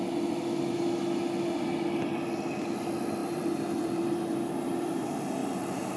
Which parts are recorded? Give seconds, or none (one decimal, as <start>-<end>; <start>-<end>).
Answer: 0.0-3.2; 4.9-5.4